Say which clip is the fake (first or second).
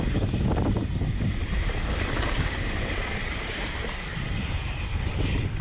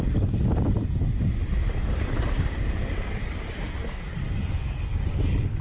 first